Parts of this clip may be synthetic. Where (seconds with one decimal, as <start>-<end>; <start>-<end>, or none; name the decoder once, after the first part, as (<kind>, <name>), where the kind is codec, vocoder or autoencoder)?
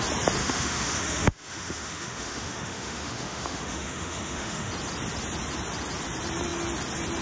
0.4-4.7 (autoencoder, DAC-VAE)